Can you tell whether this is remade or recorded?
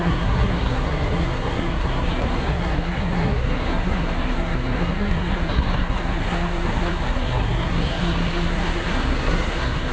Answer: remade